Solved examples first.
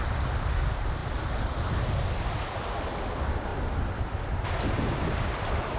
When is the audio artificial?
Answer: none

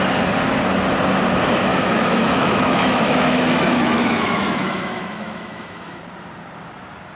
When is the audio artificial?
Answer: 1.7-6.0 (autoencoder, DAC-VAE)

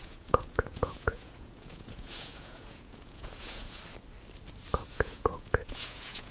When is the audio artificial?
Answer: 0.0-3.8 (vocoder, Vocos); 4.9-6.3

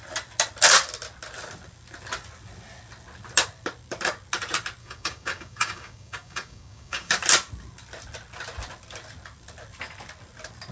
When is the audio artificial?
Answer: 4.8-7.1 (codec, DAC)